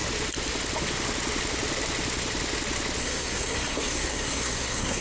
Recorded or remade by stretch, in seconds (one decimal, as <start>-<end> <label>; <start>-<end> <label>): 0.0-3.0 recorded; 3.0-5.0 remade